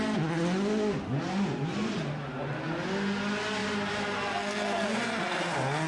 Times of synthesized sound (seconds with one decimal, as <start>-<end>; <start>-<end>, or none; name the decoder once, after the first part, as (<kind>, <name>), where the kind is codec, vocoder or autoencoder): none